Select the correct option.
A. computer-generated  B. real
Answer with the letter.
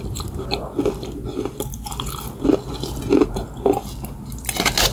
B